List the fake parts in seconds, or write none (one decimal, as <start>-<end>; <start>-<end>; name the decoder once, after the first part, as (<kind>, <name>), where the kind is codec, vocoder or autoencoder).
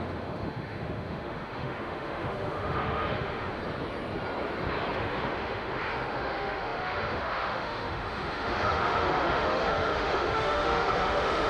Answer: 0.0-3.6 (autoencoder, DAC-VAE); 4.9-11.5